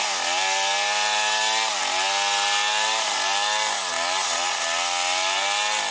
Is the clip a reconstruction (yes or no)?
no